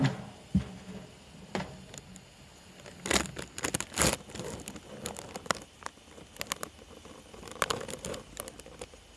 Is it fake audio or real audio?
real